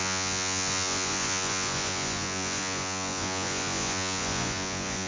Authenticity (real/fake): fake